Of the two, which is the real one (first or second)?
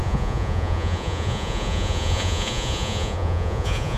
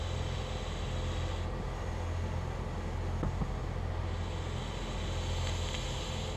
second